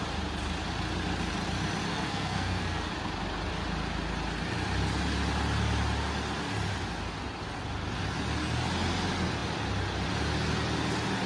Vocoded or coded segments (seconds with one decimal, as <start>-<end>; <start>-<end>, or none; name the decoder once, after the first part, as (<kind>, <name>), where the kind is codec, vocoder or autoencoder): 1.9-2.9 (codec, SNAC)